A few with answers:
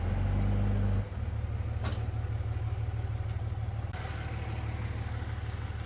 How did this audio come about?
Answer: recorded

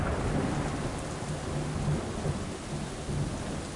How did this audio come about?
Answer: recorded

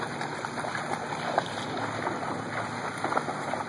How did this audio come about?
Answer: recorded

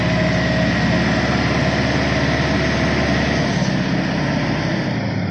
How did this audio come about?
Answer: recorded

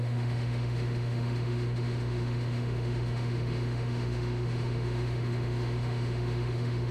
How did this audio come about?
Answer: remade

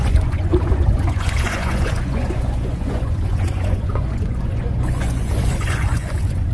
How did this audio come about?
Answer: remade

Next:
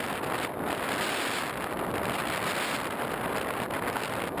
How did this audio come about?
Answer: recorded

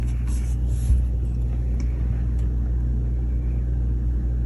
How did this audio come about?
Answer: recorded